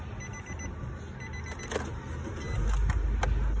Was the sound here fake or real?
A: real